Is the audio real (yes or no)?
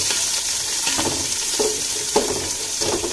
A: no